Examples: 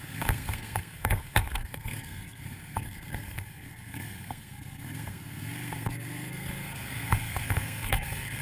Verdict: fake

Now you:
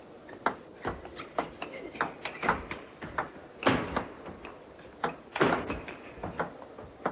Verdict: real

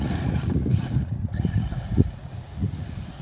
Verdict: fake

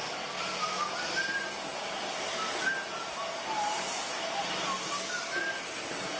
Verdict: real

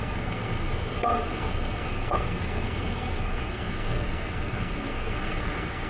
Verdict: fake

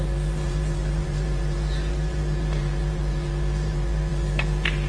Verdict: fake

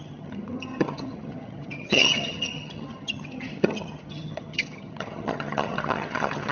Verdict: fake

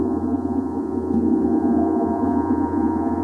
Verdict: fake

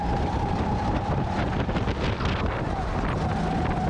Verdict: real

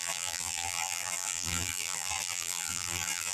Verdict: fake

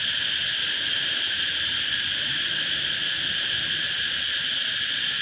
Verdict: real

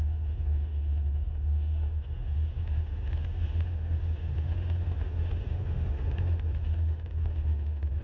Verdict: fake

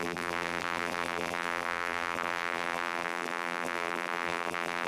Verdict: fake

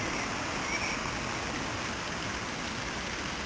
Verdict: real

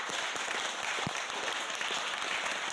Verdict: real